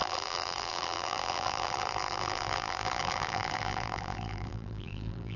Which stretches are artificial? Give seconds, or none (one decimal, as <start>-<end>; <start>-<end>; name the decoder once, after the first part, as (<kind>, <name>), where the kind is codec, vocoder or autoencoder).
0.0-5.4 (vocoder, BigVGAN v2)